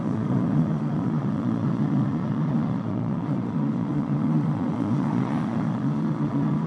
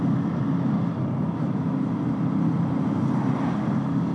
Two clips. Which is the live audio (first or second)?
second